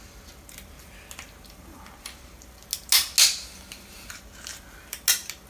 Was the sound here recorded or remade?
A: recorded